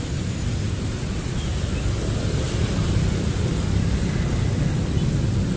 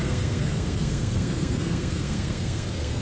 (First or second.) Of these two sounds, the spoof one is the second